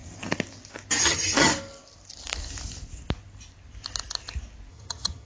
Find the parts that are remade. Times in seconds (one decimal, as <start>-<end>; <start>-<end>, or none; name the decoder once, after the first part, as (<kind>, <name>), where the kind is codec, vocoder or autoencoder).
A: 1.0-1.5 (vocoder, HiFi-GAN); 4.7-5.3